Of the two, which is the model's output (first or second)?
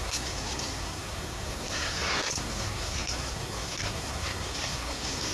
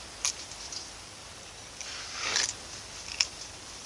first